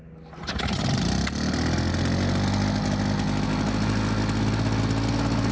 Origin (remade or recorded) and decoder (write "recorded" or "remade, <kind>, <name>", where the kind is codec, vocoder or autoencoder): recorded